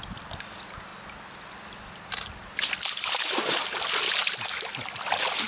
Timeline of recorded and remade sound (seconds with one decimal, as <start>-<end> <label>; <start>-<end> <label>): 0.0-5.5 recorded